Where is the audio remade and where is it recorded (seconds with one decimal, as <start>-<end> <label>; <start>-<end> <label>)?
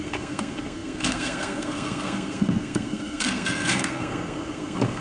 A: 0.0-5.0 remade